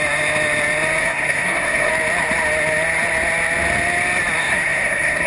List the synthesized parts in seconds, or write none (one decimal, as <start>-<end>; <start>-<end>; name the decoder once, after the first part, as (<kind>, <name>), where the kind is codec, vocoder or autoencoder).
1.0-1.9 (codec, SNAC); 4.4-5.3